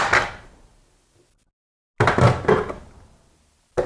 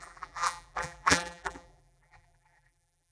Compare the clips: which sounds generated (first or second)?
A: second